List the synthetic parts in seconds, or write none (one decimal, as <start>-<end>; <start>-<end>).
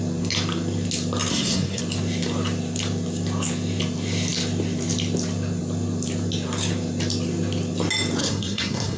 1.3-1.8; 8.2-9.0